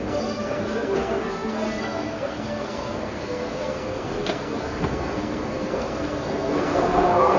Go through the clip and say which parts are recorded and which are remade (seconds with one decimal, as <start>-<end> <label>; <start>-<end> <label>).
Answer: 0.0-7.4 remade